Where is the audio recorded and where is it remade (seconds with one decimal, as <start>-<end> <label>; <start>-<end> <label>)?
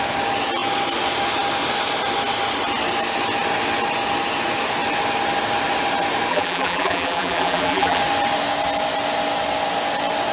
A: 0.0-6.3 recorded; 6.3-8.0 remade; 8.0-10.3 recorded